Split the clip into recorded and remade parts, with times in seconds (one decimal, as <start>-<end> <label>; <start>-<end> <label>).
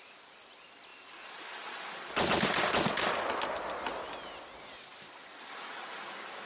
0.0-0.9 recorded; 0.9-3.1 remade; 3.1-6.5 recorded